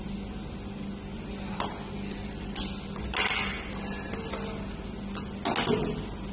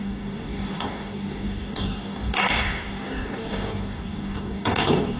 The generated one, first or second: second